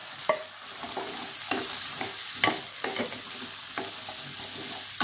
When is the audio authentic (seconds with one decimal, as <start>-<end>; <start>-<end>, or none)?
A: 0.0-5.0